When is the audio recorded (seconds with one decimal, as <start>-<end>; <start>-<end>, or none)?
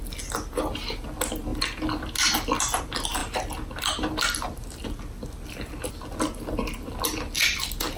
0.0-8.0